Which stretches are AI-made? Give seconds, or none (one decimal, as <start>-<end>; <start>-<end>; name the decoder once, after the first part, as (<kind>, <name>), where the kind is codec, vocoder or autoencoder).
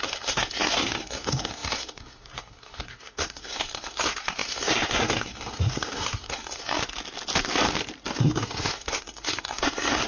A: 0.0-6.8 (codec, SNAC); 8.2-10.1